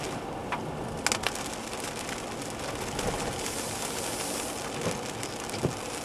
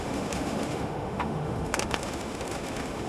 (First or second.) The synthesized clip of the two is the second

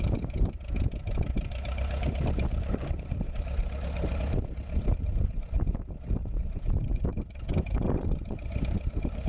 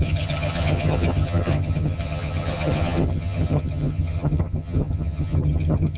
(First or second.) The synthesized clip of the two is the second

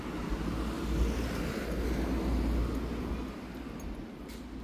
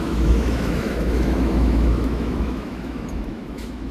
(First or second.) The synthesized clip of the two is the second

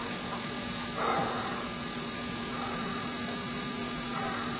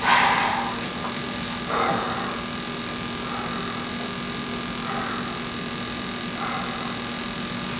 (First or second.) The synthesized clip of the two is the first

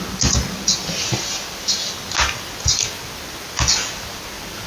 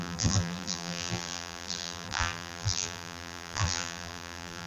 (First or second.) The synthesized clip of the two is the second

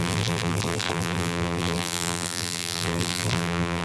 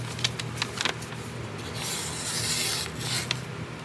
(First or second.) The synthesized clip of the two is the first